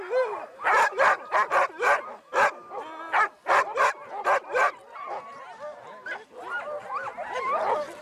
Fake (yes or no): no